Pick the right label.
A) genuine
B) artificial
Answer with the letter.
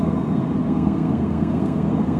B